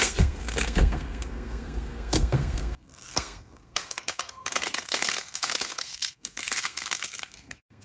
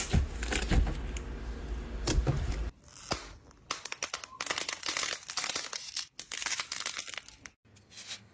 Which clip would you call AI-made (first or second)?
first